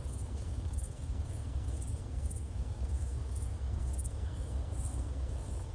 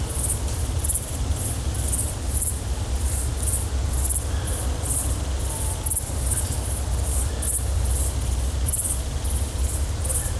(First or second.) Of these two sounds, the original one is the second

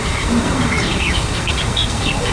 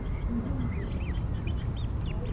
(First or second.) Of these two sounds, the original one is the second